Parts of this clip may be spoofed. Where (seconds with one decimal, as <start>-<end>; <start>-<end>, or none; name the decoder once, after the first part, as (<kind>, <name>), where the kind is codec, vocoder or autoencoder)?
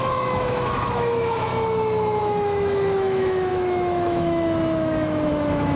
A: 0.0-1.5 (autoencoder, DAC-VAE); 2.2-5.8